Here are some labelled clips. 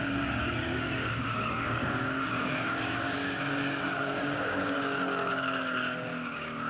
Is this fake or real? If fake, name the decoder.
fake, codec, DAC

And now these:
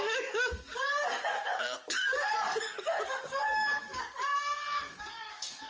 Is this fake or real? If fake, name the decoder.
fake, codec, DAC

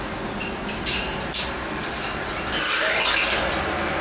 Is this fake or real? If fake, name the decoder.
real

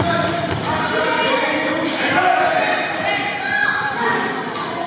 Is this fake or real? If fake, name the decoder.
real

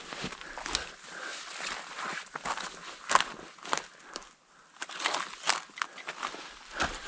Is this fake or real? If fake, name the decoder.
real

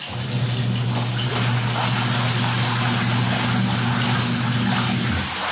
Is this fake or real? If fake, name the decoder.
real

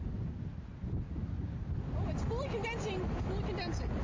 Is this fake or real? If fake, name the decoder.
real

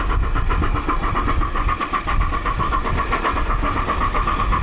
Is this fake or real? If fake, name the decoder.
real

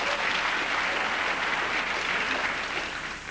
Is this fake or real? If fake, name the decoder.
real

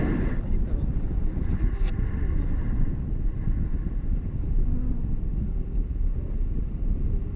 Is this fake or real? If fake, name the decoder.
real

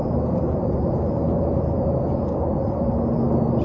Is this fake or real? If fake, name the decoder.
real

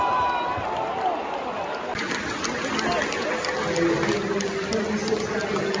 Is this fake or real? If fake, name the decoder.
real